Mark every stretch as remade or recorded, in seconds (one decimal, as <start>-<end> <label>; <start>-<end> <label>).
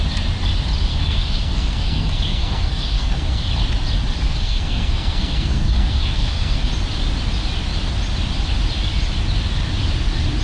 0.0-0.9 recorded; 0.9-3.5 remade; 3.5-4.3 recorded; 4.3-6.7 remade; 6.7-10.4 recorded